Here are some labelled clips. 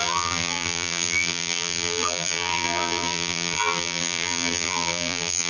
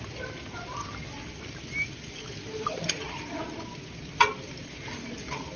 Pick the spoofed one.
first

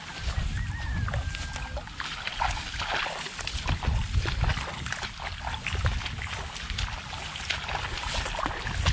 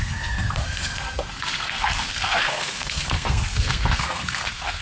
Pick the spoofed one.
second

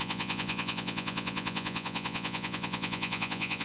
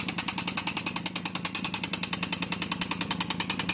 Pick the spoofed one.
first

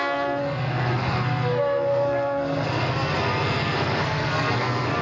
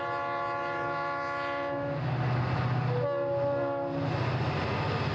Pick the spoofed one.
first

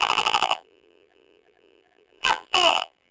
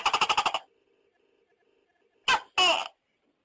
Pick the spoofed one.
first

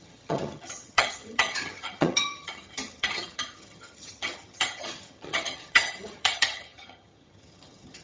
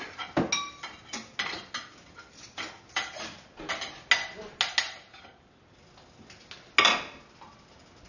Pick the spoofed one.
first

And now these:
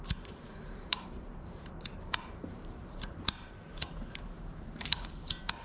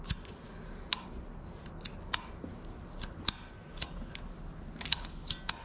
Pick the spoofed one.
first